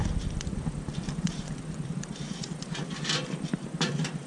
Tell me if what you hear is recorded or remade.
remade